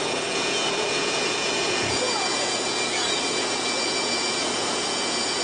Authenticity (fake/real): fake